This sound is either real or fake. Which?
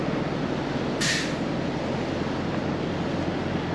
real